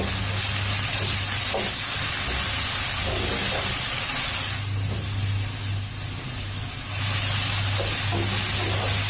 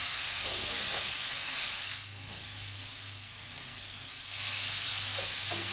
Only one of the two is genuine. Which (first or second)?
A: first